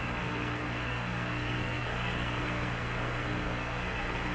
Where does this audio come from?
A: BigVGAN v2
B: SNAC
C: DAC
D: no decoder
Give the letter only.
B